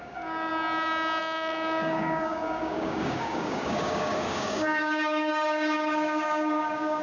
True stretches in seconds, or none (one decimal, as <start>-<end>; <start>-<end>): 0.5-1.2